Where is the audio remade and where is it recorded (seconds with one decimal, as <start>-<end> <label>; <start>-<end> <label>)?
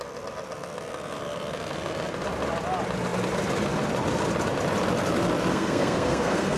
0.0-5.5 recorded; 5.5-6.6 remade